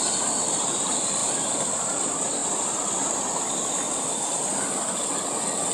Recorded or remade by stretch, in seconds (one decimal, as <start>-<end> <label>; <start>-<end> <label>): 0.0-5.7 recorded